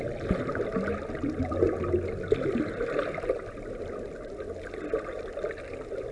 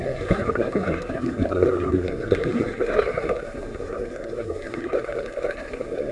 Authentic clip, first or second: first